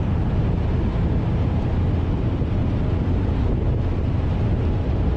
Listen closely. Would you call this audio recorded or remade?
recorded